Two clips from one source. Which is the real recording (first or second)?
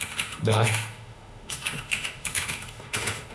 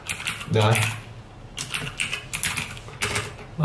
second